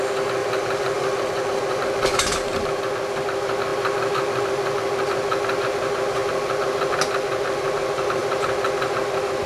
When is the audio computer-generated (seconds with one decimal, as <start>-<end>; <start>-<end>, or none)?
0.4-2.8